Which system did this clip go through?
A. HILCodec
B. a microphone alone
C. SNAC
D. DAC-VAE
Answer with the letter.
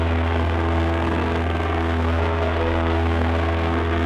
C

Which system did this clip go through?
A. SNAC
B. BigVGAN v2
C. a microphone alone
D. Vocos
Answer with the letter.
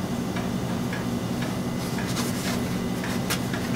C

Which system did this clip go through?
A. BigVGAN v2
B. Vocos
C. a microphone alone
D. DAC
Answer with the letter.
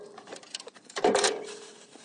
A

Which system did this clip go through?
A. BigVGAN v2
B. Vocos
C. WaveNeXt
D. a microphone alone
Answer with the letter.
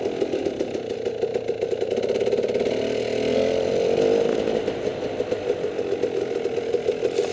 D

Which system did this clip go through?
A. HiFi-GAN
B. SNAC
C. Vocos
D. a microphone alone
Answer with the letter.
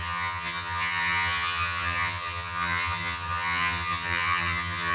A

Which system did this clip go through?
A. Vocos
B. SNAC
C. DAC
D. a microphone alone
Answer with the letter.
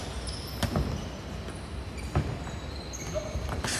D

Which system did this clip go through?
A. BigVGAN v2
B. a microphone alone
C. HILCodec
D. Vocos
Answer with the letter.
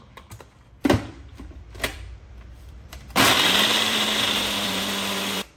A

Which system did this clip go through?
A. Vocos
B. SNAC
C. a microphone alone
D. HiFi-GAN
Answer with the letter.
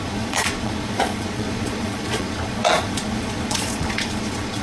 A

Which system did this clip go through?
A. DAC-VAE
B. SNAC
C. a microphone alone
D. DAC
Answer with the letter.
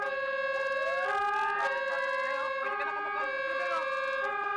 C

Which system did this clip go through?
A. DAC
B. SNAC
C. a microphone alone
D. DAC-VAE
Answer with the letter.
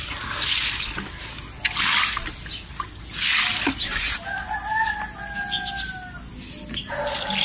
C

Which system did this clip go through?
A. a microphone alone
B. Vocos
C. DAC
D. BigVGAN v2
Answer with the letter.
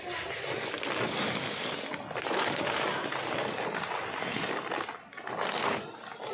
A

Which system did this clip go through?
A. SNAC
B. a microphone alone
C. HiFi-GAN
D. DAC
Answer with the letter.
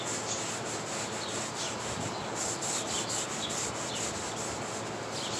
B